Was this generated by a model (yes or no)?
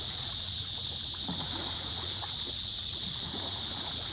yes